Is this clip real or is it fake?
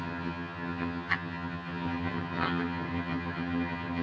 fake